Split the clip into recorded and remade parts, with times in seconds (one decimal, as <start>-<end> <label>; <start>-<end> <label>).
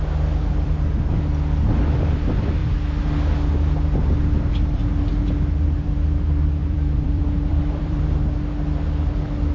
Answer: 0.0-6.6 recorded; 6.6-8.0 remade; 8.0-9.5 recorded